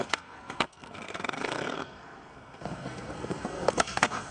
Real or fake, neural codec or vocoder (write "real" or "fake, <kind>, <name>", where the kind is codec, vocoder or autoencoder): fake, codec, SNAC